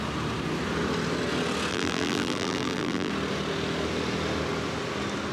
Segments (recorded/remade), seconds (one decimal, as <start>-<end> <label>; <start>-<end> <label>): 0.0-1.7 recorded; 1.7-3.1 remade; 3.1-5.3 recorded

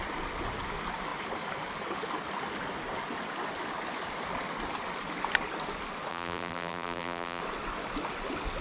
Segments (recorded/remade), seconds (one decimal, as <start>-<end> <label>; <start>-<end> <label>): 0.0-6.1 recorded; 6.1-7.4 remade; 7.4-8.6 recorded

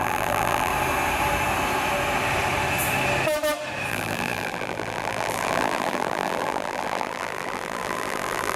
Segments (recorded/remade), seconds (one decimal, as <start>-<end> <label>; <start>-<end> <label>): 0.0-0.7 remade; 0.7-3.9 recorded; 3.9-8.6 remade

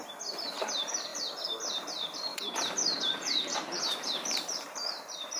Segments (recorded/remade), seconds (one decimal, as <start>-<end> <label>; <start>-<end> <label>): 0.0-5.4 remade

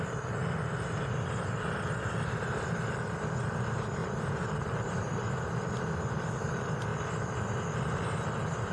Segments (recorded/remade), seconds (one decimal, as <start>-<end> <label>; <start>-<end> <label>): 0.0-4.0 recorded; 4.0-5.3 remade; 5.3-8.7 recorded

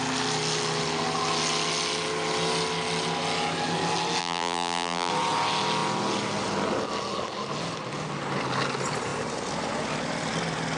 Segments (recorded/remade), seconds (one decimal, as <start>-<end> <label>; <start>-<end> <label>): 0.0-4.2 recorded; 4.2-5.1 remade; 5.1-10.8 recorded

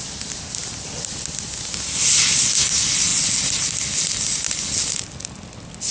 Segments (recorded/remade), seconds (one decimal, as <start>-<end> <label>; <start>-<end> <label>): 0.0-0.6 recorded; 0.6-1.4 remade; 1.4-5.9 recorded